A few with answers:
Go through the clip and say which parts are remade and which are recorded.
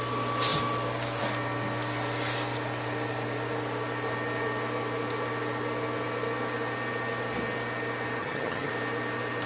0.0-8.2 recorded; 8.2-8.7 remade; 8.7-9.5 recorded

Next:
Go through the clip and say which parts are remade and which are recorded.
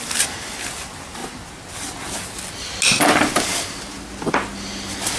0.0-5.2 recorded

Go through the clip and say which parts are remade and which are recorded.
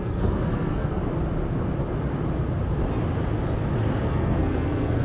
0.0-1.0 remade; 1.0-4.0 recorded; 4.0-5.0 remade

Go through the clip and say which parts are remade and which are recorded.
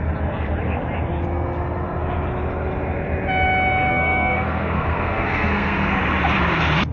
0.0-3.9 recorded; 3.9-6.0 remade; 6.0-6.9 recorded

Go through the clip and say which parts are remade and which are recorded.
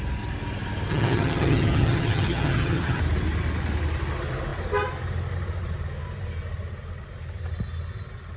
0.0-0.9 recorded; 0.9-3.0 remade; 3.0-8.4 recorded